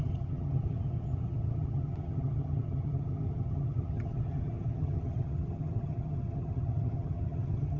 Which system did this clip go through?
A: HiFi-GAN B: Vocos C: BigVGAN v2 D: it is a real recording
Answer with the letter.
A